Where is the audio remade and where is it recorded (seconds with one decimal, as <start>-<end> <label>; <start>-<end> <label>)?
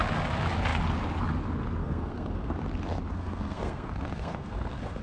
0.0-1.8 recorded; 1.8-2.5 remade; 2.5-3.1 recorded; 3.1-5.0 remade